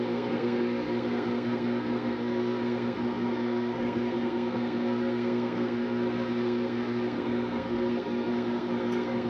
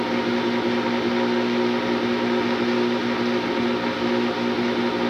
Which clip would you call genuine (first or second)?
second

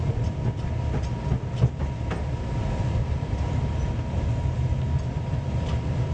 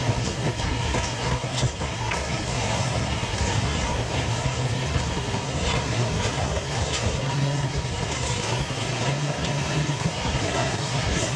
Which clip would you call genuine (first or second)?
first